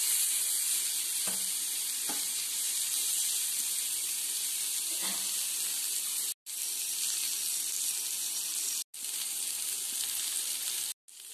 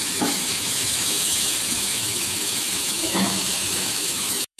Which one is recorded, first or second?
first